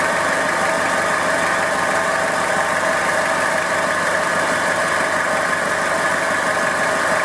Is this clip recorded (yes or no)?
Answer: yes